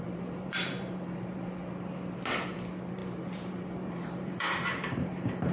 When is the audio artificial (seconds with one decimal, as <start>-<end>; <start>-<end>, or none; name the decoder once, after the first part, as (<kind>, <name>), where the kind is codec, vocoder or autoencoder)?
0.0-1.6 (vocoder, BigVGAN v2); 2.5-5.5